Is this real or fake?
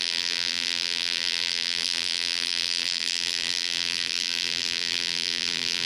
fake